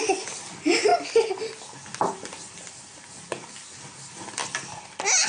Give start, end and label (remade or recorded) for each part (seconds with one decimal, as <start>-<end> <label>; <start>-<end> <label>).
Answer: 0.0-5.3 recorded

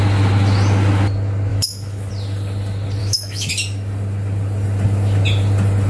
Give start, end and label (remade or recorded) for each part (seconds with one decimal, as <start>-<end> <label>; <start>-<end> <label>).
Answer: 0.0-1.5 recorded; 1.5-2.1 remade; 2.1-3.0 recorded; 3.0-3.5 remade; 3.5-5.9 recorded

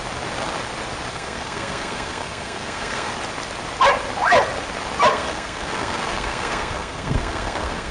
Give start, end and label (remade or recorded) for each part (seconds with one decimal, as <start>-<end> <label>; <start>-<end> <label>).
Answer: 0.0-1.1 recorded; 1.1-3.1 remade; 3.1-5.1 recorded; 5.1-7.9 remade

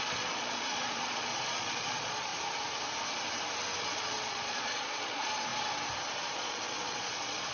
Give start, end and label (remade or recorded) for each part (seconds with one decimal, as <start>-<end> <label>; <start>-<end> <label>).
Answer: 0.0-2.3 remade; 2.3-3.8 recorded; 3.8-5.5 remade; 5.5-6.3 recorded; 6.3-7.5 remade

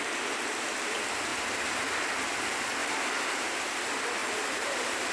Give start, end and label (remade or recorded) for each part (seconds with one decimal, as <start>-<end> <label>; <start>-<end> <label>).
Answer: 0.0-2.8 recorded; 2.8-3.4 remade; 3.4-4.2 recorded; 4.2-5.1 remade